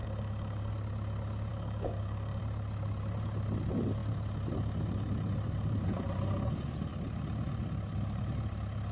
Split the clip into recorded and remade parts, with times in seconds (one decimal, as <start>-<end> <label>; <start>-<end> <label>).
0.0-0.7 remade; 0.7-1.5 recorded; 1.5-2.4 remade; 2.4-8.9 recorded